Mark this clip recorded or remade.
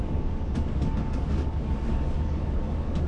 remade